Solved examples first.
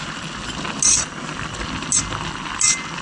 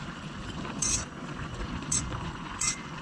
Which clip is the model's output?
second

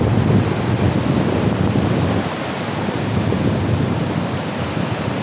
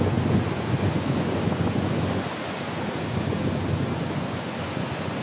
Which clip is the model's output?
second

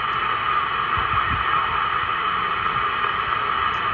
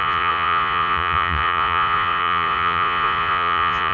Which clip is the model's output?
second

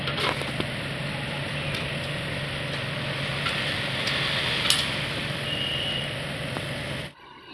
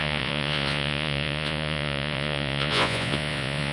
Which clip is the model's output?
second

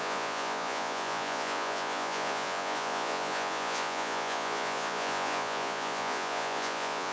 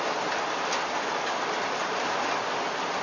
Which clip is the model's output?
first